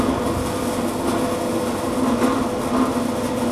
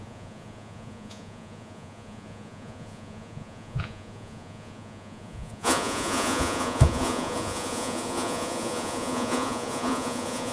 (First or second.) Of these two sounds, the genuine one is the first